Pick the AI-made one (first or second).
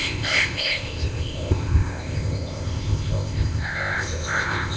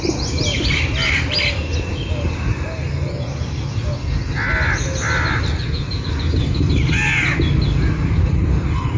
first